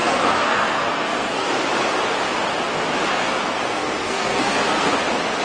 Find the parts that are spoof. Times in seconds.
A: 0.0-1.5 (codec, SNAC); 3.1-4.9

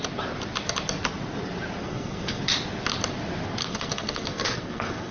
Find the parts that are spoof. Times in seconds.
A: 1.8-2.4 (codec, SNAC); 3.6-5.1

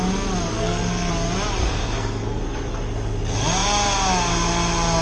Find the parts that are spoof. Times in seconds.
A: 0.5-1.1 (codec, SNAC); 1.6-2.4